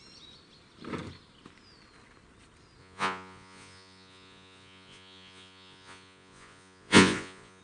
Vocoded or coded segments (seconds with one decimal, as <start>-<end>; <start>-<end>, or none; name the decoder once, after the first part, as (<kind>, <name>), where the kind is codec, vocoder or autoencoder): 2.8-7.6 (vocoder, Vocos)